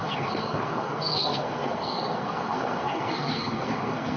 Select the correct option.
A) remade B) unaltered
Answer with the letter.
A